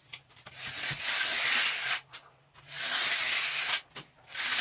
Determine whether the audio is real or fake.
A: real